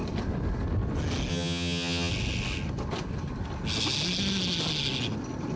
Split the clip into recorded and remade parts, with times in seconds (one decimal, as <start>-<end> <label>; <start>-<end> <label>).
0.0-1.3 recorded; 1.3-2.1 remade; 2.1-5.6 recorded